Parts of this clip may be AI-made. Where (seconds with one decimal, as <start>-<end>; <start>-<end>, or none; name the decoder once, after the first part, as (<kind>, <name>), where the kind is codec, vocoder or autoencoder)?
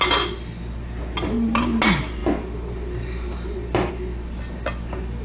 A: none